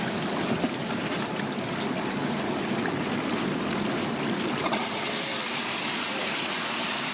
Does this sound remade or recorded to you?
recorded